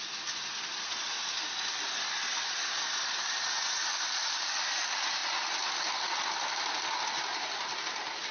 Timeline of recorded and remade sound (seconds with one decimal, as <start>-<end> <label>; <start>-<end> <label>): 0.0-8.3 recorded